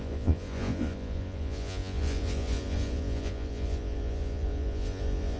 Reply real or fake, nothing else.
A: fake